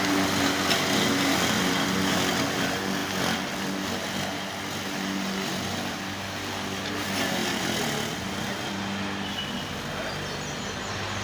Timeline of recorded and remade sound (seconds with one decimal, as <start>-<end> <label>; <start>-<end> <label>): 0.0-11.2 recorded